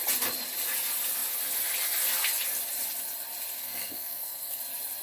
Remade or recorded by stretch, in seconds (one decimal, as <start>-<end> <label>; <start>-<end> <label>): 0.0-3.6 recorded; 3.6-4.6 remade; 4.6-5.0 recorded